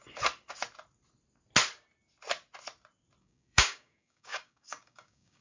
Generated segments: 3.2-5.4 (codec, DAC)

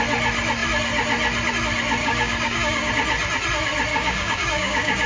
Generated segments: 2.0-2.9 (codec, DAC); 3.9-5.1